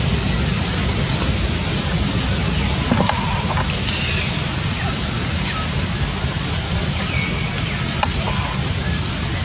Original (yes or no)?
yes